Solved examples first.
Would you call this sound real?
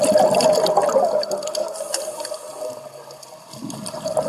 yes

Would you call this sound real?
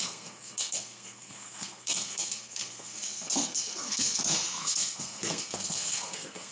no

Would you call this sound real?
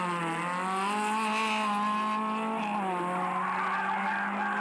yes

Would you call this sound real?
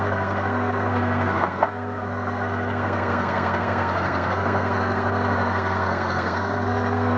no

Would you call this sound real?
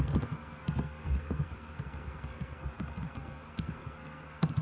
no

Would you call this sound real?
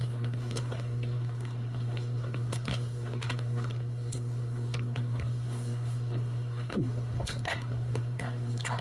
no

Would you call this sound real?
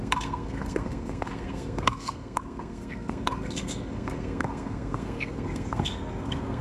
no